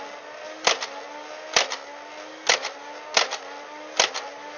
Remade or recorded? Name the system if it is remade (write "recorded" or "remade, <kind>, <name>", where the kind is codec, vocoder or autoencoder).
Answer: recorded